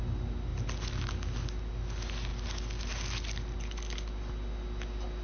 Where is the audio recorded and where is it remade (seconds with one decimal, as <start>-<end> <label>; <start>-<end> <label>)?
0.0-5.2 recorded